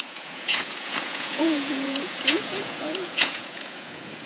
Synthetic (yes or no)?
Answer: yes